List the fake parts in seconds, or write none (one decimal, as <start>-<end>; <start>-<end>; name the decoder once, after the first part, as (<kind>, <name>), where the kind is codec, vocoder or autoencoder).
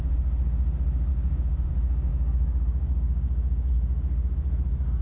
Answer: 1.1-1.7 (codec, DAC); 2.1-3.7